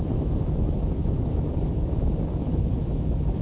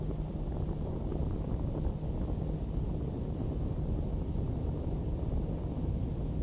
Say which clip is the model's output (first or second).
first